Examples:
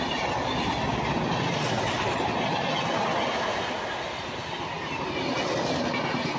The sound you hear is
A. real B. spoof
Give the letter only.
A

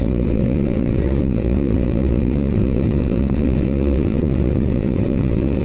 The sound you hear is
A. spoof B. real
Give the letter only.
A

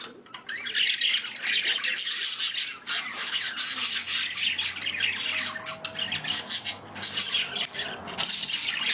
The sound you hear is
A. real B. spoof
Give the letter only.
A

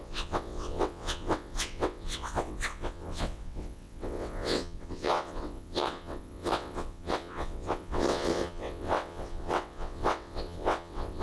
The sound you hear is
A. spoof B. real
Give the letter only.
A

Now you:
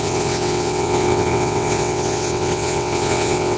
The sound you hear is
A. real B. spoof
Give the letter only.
B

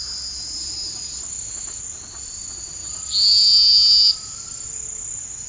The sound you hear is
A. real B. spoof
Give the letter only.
A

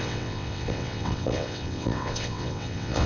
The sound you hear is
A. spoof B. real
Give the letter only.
A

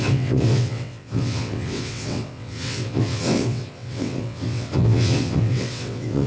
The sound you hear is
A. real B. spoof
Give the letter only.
B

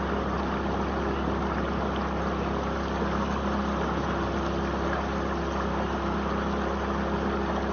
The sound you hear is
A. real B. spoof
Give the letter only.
A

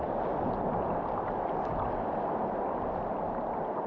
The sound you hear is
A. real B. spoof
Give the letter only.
A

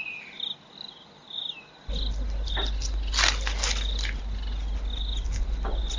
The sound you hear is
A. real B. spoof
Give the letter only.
A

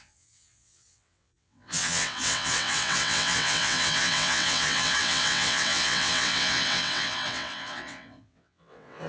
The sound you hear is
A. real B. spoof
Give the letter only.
B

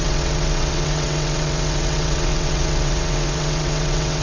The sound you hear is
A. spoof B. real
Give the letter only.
A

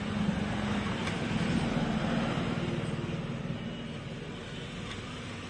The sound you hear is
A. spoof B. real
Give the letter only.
B